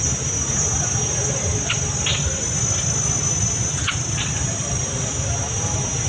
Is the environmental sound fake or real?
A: real